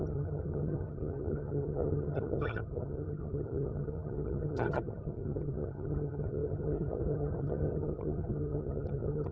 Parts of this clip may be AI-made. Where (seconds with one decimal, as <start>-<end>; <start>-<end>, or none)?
0.0-9.3

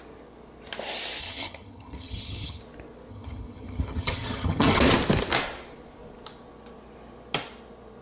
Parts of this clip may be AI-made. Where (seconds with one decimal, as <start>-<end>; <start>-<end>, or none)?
1.2-2.6; 3.1-4.8